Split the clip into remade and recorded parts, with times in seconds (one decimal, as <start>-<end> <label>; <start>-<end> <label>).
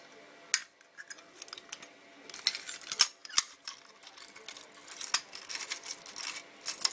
0.0-0.6 recorded; 0.6-1.1 remade; 1.1-3.2 recorded; 3.2-3.7 remade; 3.7-6.9 recorded